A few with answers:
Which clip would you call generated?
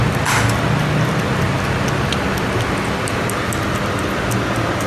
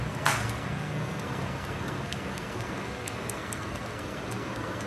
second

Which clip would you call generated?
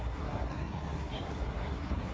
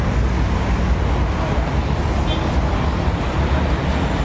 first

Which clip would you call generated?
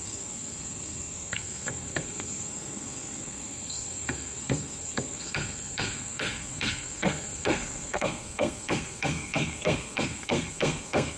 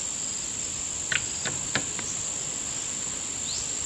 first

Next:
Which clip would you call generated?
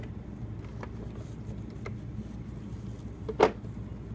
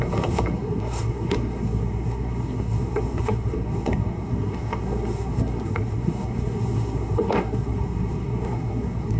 second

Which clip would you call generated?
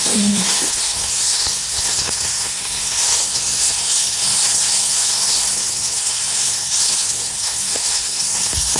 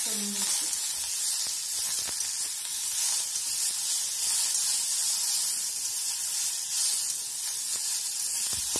first